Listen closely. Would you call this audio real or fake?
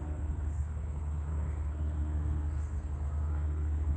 fake